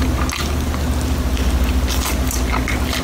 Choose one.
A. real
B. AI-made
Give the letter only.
A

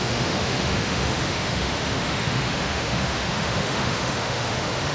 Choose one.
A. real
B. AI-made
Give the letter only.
B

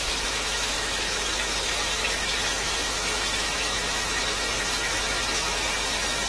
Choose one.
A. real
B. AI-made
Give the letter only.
B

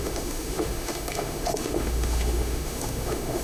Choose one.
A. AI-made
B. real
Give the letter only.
A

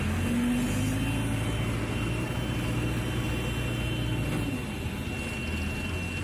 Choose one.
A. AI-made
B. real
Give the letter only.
B